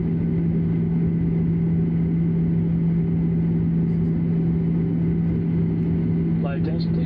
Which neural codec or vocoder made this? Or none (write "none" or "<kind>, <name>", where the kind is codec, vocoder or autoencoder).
none